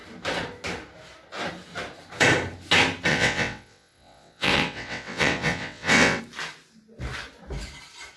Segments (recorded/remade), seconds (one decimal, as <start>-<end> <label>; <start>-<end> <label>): 0.0-3.1 recorded; 3.1-6.2 remade; 6.2-8.2 recorded